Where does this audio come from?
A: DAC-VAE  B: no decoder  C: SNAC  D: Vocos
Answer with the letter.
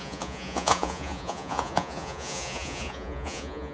D